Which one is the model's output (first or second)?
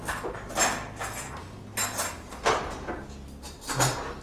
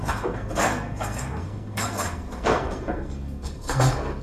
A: second